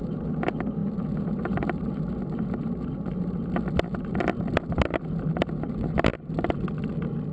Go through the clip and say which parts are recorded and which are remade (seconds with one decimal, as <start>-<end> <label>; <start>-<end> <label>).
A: 0.0-7.3 recorded